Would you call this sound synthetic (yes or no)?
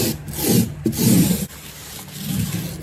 no